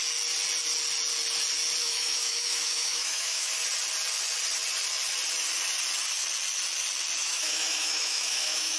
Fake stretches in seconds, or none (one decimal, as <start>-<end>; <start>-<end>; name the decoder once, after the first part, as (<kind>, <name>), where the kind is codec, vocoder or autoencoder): 1.8-3.5 (autoencoder, DAC-VAE); 7.2-8.8

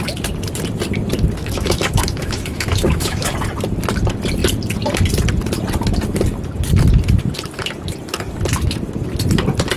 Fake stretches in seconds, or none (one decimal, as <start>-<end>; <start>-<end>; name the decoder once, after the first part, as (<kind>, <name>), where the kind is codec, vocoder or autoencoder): 1.4-3.3 (autoencoder, DAC-VAE)

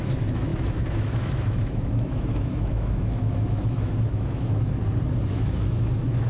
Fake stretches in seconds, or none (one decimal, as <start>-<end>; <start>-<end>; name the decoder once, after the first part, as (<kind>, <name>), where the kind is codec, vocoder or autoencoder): 0.0-4.8 (autoencoder, DAC-VAE); 5.3-6.3

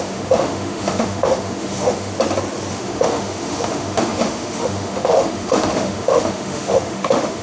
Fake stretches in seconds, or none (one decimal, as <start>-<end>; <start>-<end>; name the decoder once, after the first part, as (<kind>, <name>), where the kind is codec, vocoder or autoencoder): 0.0-2.1 (autoencoder, DAC-VAE); 2.7-7.4

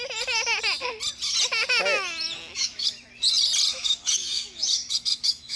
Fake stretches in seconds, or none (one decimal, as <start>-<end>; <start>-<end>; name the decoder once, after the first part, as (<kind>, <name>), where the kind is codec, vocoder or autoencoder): 2.5-3.1 (autoencoder, DAC-VAE); 3.7-5.6